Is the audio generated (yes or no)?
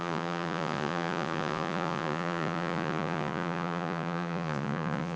yes